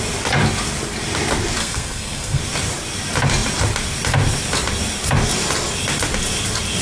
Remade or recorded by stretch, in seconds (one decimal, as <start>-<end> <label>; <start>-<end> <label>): 0.0-1.6 recorded; 1.6-2.4 remade; 2.4-6.8 recorded